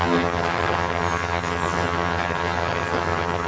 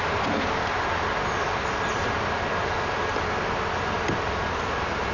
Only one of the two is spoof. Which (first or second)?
first